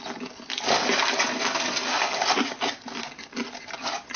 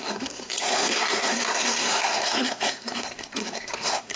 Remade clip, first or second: second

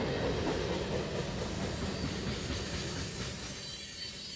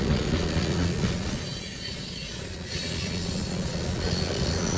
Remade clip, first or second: second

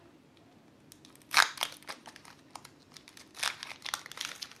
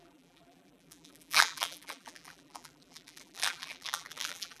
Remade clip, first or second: second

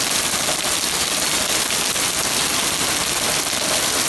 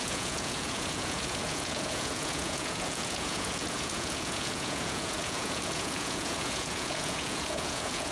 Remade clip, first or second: second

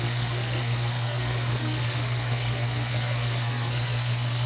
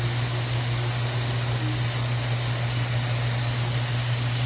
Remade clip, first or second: first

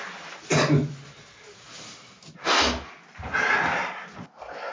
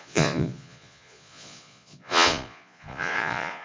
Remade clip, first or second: second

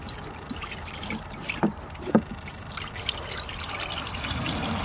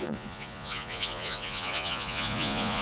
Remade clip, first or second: second